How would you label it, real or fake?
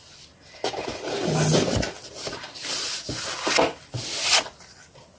real